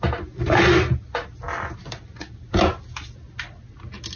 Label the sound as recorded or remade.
recorded